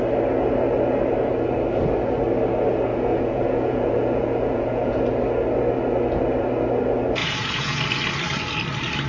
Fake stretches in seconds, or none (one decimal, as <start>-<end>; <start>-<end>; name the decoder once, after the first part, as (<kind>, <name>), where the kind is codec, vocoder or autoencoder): 2.9-5.0 (vocoder, Vocos); 7.2-7.8